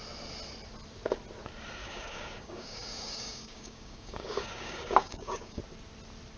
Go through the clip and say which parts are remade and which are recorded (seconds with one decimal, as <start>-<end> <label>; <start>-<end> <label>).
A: 0.0-1.8 recorded; 1.8-5.6 remade; 5.6-6.4 recorded